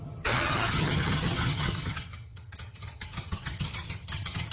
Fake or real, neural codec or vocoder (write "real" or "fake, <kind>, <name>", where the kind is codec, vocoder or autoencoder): fake, vocoder, HiFi-GAN